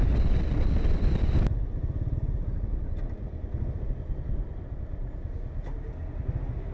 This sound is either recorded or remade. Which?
recorded